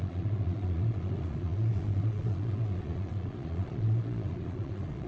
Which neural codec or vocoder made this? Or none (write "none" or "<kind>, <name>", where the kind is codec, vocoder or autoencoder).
vocoder, Vocos